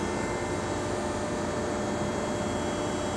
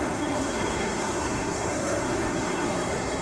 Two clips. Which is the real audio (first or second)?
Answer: first